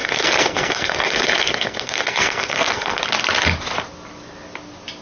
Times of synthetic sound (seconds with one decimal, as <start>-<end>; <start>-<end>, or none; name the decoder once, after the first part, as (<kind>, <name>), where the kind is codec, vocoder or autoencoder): 0.0-3.0 (codec, SNAC)